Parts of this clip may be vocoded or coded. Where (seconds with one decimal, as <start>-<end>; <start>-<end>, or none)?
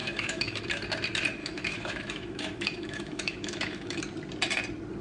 0.0-0.6; 1.4-4.0